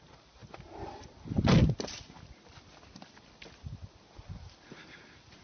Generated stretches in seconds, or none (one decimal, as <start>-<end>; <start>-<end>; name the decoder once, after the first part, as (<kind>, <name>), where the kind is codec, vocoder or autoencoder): none

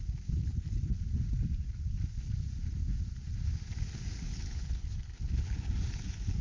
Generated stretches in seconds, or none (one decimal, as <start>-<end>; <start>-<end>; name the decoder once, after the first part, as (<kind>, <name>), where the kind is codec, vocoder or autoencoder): 0.4-1.0 (codec, HILCodec); 4.3-5.7